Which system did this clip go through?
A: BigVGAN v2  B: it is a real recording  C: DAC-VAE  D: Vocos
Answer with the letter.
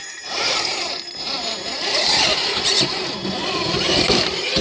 A